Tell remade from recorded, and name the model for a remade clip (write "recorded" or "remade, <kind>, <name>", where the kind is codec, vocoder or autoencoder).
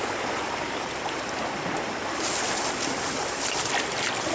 remade, vocoder, BigVGAN v2